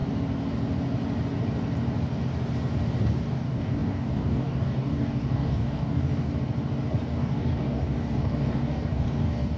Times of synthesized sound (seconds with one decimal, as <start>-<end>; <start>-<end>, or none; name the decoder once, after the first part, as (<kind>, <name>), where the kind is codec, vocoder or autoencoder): 3.3-6.3 (codec, DAC); 7.2-9.6